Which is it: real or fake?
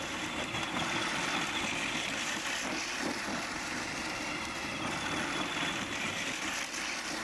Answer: real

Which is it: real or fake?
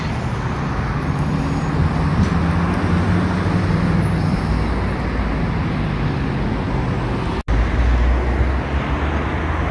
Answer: real